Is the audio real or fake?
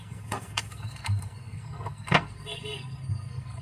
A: fake